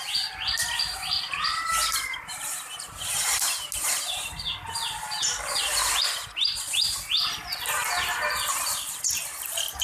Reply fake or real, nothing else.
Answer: real